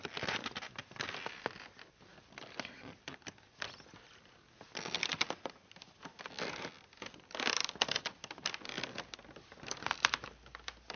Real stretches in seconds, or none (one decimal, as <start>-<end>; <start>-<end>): 0.0-11.0